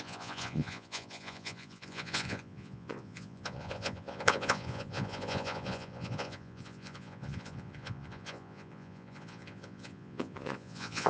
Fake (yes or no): yes